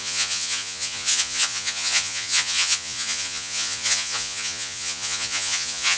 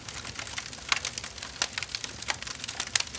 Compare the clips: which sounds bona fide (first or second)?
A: second